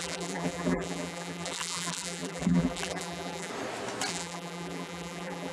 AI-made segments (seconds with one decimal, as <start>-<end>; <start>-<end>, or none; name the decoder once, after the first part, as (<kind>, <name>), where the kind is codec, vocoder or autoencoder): 0.0-3.5 (vocoder, BigVGAN v2); 4.1-5.5